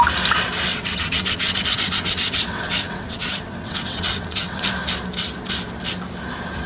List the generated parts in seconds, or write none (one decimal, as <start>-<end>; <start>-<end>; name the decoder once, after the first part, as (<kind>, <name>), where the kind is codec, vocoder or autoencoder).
0.7-4.7 (vocoder, WaveNeXt)